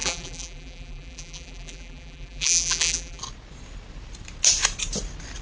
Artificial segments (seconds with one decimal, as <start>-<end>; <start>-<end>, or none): 0.0-3.2